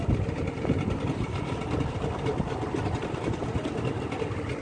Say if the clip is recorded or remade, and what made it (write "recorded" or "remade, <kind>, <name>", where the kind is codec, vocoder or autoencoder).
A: recorded